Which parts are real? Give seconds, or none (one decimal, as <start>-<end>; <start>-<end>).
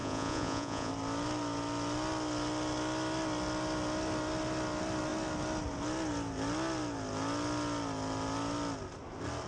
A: 0.9-9.5